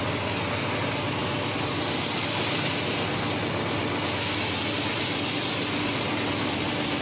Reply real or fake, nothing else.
real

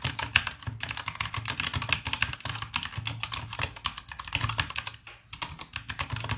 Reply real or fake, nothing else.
real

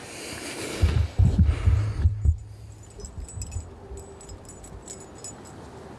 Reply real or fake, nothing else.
real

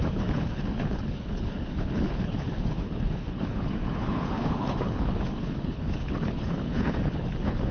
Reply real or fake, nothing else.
fake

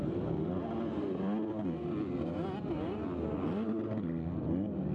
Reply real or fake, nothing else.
real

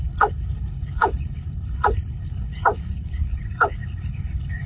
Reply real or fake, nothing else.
fake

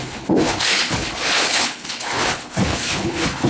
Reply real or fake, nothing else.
fake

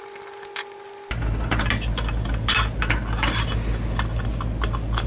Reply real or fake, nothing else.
real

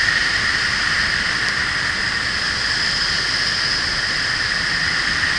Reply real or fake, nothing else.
real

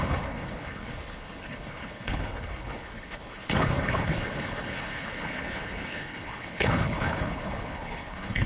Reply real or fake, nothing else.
fake